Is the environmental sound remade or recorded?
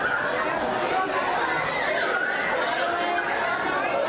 recorded